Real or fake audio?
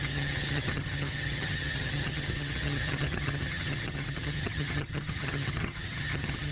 fake